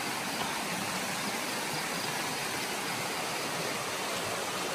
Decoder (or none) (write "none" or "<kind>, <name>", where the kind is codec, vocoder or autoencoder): none